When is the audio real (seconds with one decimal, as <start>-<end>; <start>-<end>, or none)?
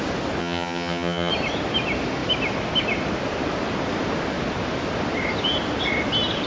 0.0-0.4; 1.3-6.5